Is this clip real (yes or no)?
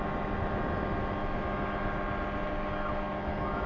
yes